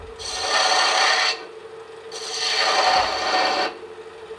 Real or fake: real